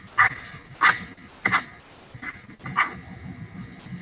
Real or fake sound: real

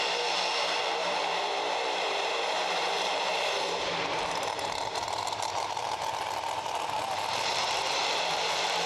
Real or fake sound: fake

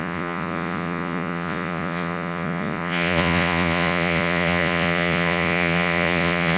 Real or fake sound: fake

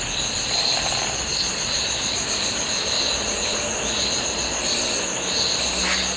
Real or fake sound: real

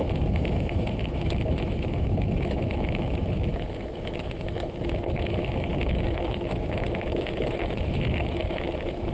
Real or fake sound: fake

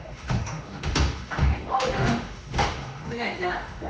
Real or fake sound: fake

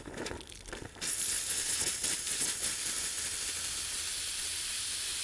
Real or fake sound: real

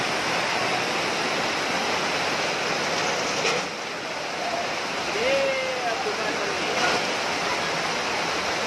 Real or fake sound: real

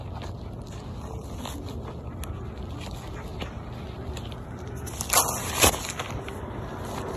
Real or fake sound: real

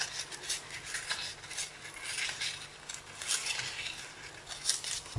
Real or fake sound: real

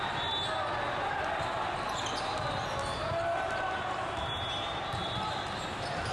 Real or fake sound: real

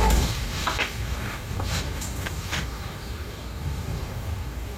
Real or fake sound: fake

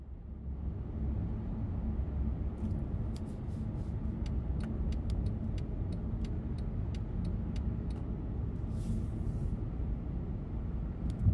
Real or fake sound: real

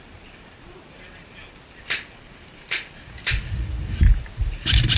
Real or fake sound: real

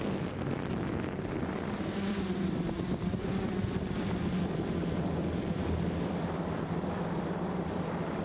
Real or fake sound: fake